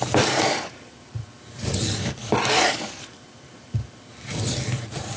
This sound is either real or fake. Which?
fake